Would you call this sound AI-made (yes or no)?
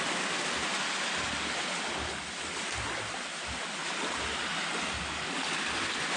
no